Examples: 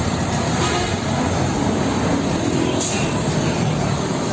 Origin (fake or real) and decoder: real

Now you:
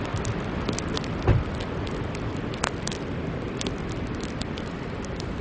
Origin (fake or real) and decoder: real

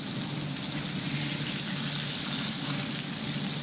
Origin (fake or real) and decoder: real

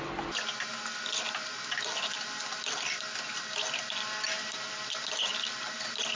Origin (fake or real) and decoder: real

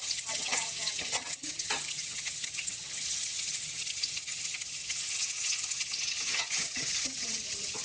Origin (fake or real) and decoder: fake, vocoder, HiFi-GAN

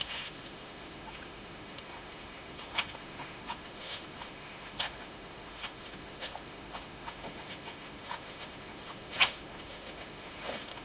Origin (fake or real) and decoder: fake, autoencoder, DAC-VAE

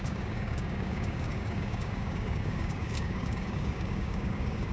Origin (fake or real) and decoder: fake, codec, DAC